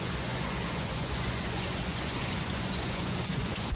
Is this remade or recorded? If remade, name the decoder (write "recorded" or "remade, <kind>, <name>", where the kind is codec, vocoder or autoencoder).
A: remade, vocoder, Vocos